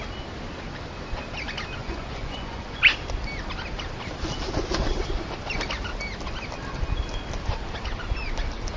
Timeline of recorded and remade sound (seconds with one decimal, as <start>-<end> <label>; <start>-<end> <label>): 0.0-1.8 recorded; 1.8-2.8 remade; 2.8-8.8 recorded